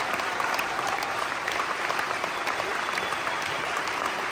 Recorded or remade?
remade